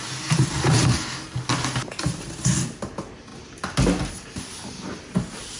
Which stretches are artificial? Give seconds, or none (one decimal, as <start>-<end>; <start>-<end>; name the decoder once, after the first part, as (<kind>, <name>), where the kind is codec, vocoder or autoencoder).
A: none